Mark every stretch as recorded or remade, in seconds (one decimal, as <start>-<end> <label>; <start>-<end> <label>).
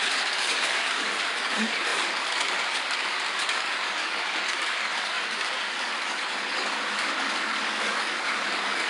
0.0-8.9 remade